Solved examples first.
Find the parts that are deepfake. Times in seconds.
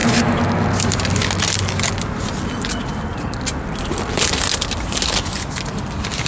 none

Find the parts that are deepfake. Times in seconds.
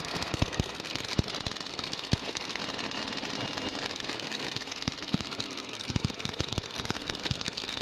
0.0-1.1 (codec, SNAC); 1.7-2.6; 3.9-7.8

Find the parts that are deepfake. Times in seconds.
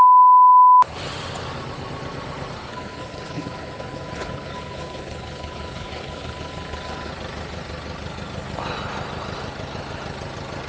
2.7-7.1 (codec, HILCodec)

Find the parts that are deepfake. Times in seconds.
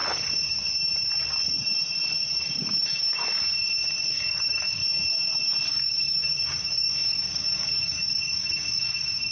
2.5-3.2 (codec, DAC); 4.1-4.8; 5.7-9.3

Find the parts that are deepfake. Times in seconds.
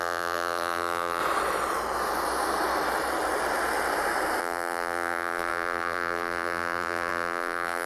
0.0-1.2 (vocoder, BigVGAN v2); 4.4-7.9